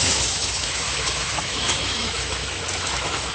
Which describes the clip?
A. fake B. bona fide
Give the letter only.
A